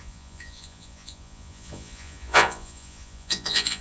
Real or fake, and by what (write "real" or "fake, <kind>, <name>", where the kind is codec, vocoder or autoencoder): fake, vocoder, Vocos